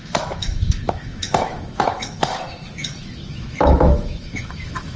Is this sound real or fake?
fake